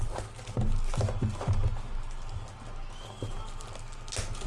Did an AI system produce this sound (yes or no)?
no